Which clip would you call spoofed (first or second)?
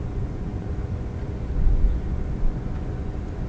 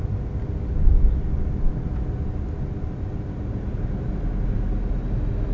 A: first